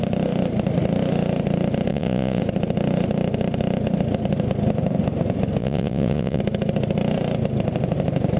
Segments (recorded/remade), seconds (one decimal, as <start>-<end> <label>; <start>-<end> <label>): 0.0-1.9 recorded; 1.9-2.4 remade; 2.4-5.6 recorded; 5.6-6.4 remade; 6.4-8.4 recorded